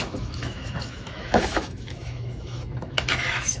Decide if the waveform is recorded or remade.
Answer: remade